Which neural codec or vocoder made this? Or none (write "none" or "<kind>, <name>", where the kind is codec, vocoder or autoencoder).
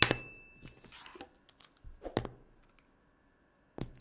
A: none